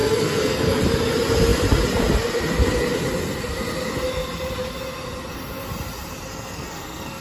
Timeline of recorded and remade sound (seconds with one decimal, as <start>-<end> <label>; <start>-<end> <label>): 0.0-0.8 remade; 0.8-6.3 recorded; 6.3-7.2 remade